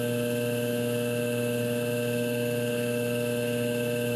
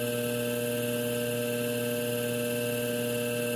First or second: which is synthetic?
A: first